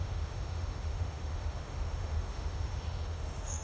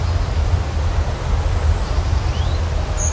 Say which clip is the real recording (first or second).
second